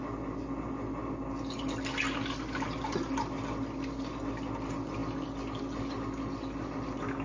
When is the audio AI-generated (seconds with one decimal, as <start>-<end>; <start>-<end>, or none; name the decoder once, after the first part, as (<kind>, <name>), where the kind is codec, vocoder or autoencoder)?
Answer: none